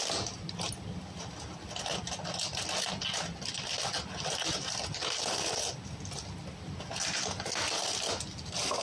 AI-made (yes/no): no